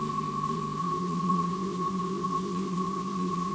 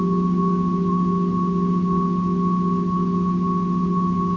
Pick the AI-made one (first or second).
first